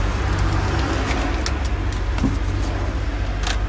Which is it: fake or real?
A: real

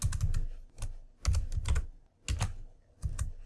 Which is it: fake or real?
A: real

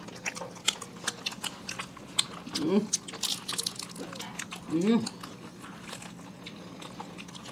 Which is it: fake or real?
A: real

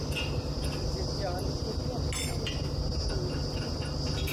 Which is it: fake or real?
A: real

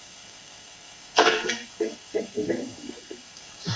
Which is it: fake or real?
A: fake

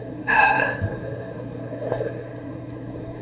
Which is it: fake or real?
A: fake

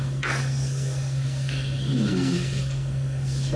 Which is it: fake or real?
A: fake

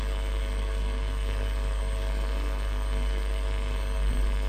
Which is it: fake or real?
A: fake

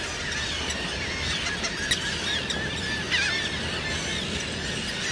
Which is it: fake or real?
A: real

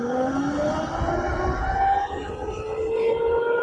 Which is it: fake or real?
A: real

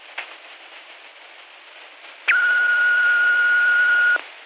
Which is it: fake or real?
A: real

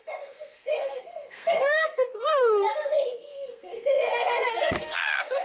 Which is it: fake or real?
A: fake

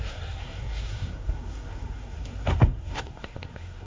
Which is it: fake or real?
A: fake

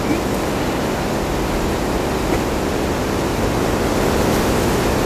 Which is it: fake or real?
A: real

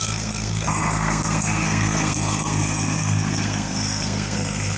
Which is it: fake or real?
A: fake